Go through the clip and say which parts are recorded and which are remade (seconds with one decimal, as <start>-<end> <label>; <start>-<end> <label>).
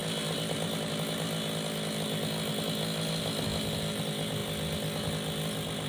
0.0-5.9 recorded